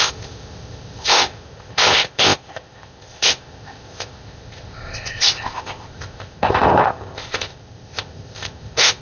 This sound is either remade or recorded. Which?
remade